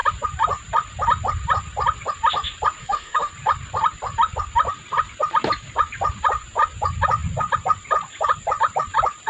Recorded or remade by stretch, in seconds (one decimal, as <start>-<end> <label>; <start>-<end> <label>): 0.0-2.8 recorded; 2.8-3.3 remade; 3.3-9.3 recorded